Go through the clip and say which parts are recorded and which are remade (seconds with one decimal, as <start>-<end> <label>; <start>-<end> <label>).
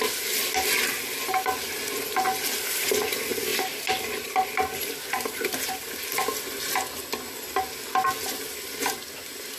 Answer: 0.0-9.6 recorded